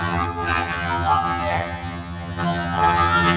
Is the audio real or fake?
fake